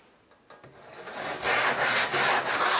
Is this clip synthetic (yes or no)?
no